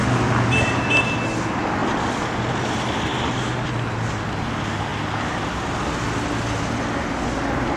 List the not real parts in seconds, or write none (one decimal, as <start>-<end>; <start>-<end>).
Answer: none